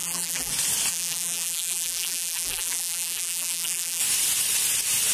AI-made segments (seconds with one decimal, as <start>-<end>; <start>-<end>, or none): 0.0-0.5; 0.9-4.0

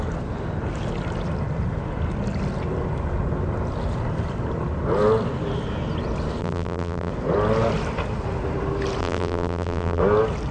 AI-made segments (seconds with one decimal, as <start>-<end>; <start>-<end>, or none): 6.4-7.1; 9.0-10.0

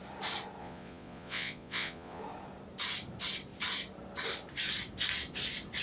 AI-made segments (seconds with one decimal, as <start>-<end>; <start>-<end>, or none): 0.6-2.2

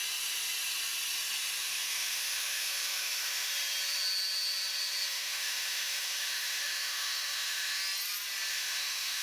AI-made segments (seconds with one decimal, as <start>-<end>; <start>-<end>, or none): 1.6-3.5; 5.1-7.8; 8.5-9.2

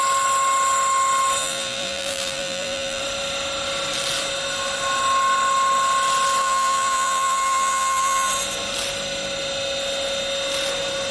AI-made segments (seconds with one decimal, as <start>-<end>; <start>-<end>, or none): 1.4-3.0; 6.4-8.3

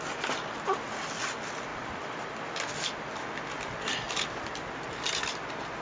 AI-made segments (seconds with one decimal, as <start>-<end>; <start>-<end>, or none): none

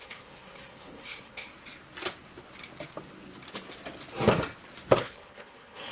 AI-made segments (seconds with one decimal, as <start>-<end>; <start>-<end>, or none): 0.0-1.5; 5.0-5.9